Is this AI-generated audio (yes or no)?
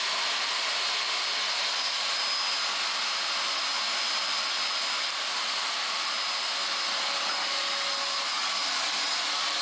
no